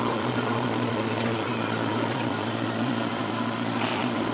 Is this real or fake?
fake